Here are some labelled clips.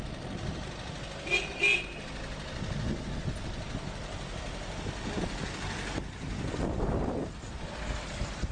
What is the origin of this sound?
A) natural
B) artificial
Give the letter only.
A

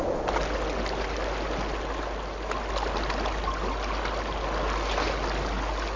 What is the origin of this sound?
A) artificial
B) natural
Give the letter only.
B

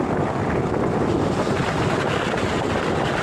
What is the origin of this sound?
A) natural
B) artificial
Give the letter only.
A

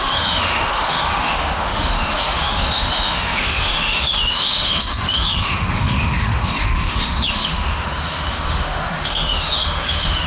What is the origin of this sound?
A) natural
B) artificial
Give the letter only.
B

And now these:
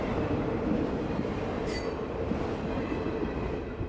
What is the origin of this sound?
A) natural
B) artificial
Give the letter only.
B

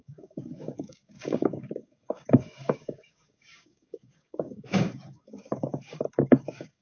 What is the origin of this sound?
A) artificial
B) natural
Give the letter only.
A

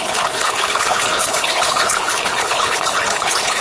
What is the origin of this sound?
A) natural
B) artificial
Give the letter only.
B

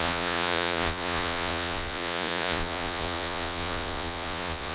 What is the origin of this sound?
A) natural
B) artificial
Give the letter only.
B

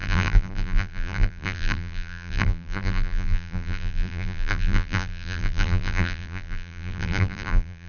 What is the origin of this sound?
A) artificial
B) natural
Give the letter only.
A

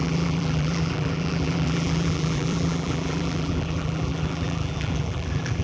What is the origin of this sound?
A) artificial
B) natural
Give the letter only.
A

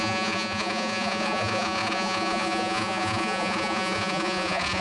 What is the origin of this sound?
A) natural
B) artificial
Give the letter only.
B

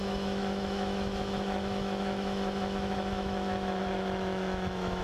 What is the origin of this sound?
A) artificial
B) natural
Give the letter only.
A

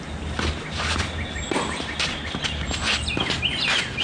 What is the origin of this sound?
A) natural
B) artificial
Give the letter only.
A